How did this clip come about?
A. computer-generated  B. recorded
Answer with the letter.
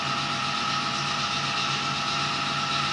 B